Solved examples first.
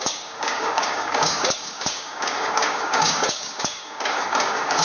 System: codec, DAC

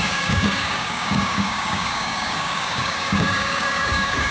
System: codec, DAC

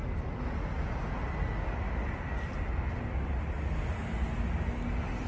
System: none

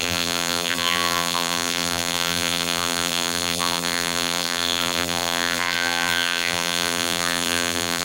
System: vocoder, BigVGAN v2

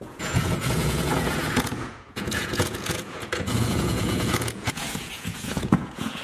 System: vocoder, Vocos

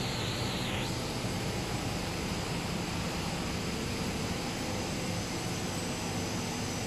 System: none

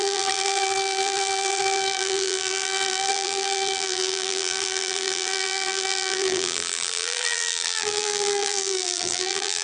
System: vocoder, BigVGAN v2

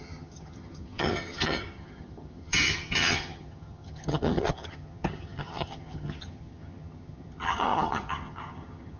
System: vocoder, HiFi-GAN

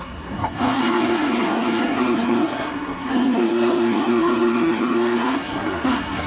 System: codec, SNAC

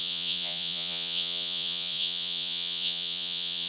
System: vocoder, Vocos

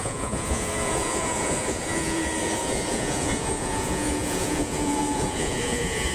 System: vocoder, Vocos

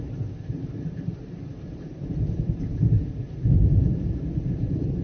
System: vocoder, BigVGAN v2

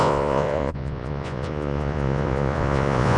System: vocoder, Vocos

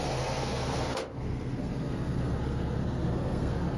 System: codec, SNAC